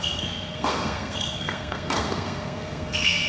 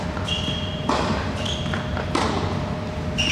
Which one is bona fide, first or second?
second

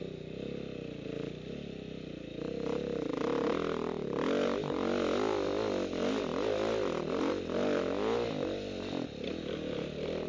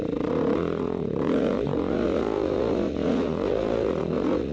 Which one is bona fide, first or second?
first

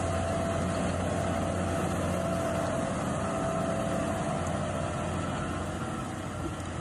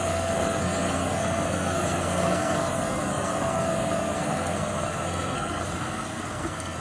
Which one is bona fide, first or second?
first